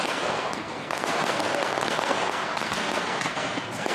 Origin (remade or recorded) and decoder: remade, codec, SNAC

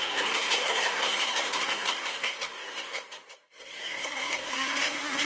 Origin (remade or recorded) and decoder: remade, codec, SNAC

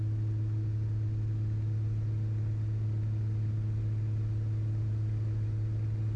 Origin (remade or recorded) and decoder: recorded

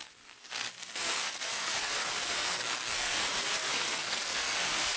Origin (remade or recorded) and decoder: remade, codec, SNAC